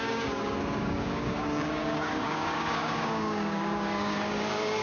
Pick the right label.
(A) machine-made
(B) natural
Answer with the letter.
A